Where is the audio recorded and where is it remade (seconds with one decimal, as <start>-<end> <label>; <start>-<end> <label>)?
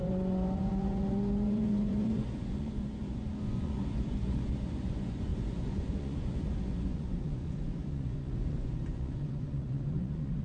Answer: 0.0-10.4 remade